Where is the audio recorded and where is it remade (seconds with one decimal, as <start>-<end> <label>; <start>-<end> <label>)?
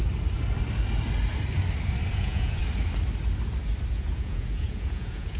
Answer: 0.0-2.1 recorded; 2.1-2.6 remade; 2.6-3.9 recorded; 3.9-5.4 remade